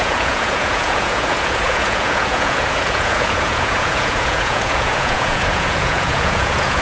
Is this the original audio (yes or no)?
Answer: no